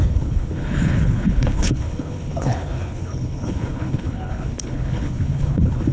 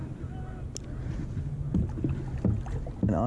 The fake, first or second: first